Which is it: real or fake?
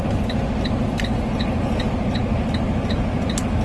real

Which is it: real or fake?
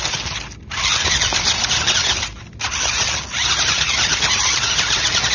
real